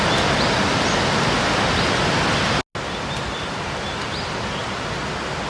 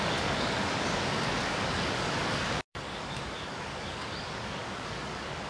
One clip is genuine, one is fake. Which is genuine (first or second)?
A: first